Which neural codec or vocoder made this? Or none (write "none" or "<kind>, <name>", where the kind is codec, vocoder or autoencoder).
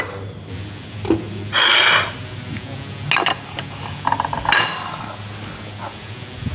none